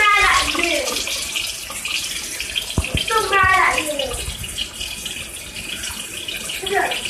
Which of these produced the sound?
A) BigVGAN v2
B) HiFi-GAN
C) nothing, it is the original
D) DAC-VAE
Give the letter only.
C